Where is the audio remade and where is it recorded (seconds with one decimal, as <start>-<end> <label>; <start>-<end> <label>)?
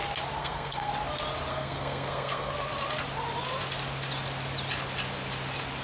0.0-0.4 recorded; 0.4-0.9 remade; 0.9-1.5 recorded; 1.5-2.5 remade; 2.5-5.8 recorded